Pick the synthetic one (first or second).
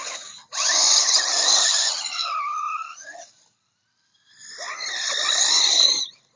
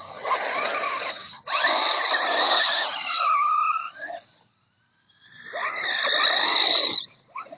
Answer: second